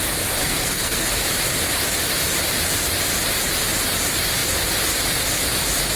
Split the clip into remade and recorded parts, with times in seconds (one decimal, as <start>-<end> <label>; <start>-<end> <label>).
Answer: 0.0-0.4 recorded; 0.4-1.1 remade; 1.1-6.0 recorded